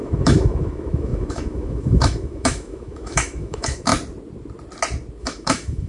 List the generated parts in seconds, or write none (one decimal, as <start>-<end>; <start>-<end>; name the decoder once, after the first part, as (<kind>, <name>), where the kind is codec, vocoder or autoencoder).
0.0-3.9 (autoencoder, DAC-VAE); 5.2-5.9